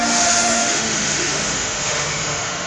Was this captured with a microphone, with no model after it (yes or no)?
no